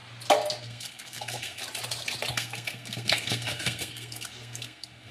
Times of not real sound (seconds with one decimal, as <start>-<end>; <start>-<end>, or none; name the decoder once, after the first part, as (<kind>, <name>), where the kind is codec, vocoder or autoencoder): 0.6-1.6 (codec, SNAC); 2.3-5.1